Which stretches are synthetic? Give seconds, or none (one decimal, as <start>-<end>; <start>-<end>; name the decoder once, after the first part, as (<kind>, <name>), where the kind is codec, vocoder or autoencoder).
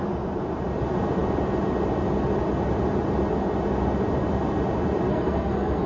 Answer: 5.1-5.9 (codec, SNAC)